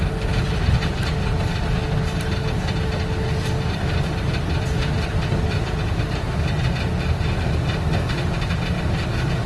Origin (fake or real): real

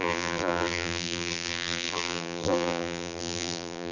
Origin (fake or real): fake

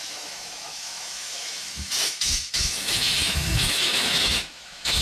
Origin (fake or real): fake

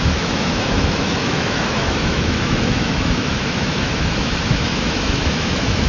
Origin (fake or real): fake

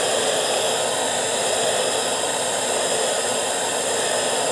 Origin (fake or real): real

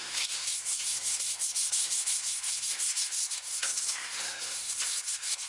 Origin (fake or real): fake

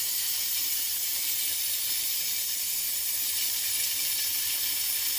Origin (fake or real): fake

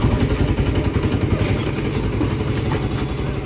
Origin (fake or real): real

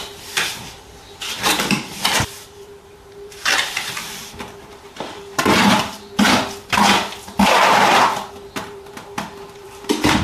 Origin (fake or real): fake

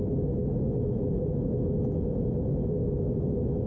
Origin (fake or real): fake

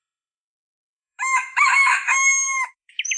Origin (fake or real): fake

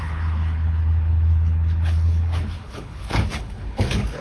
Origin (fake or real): fake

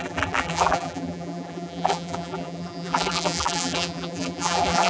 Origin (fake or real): fake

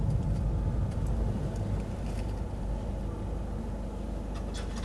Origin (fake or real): real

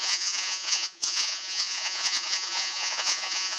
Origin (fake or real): fake